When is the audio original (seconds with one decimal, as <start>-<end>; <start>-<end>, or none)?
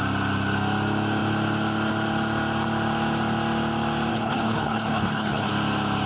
0.0-4.1; 5.5-6.1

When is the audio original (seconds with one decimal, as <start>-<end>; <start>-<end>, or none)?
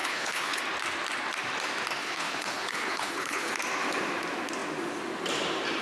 0.6-2.0; 3.5-5.8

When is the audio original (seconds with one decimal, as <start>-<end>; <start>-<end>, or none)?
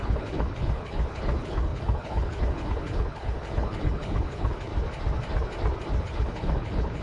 4.7-6.0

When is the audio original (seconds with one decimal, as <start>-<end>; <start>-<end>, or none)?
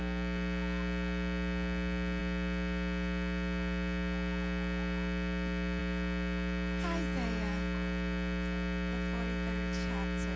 0.0-10.4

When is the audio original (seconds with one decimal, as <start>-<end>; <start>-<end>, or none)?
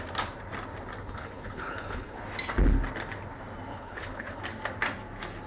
0.0-1.0; 2.2-3.7; 4.4-5.5